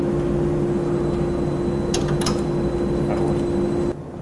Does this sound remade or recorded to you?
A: recorded